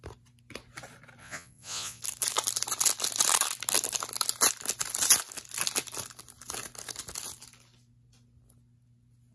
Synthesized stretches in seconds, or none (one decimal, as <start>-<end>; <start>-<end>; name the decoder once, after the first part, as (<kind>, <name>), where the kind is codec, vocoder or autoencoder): 1.2-2.0 (vocoder, Vocos)